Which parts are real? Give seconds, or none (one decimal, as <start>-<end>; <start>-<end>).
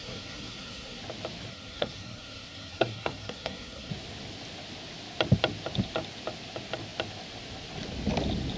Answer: 1.0-1.5; 3.9-8.6